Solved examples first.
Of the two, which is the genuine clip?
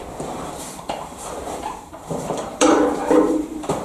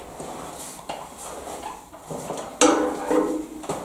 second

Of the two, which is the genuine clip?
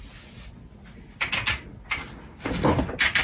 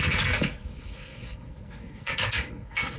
first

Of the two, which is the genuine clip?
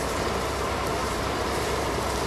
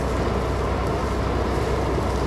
second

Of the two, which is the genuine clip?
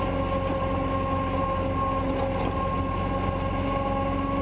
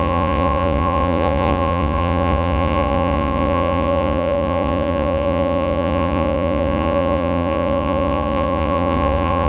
first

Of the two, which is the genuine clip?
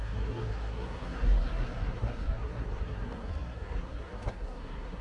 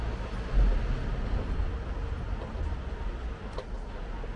second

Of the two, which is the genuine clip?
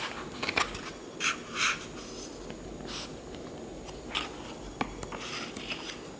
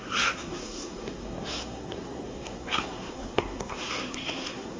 first